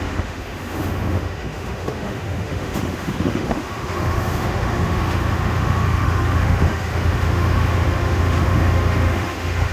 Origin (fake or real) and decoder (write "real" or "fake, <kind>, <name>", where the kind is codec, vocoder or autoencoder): fake, autoencoder, DAC-VAE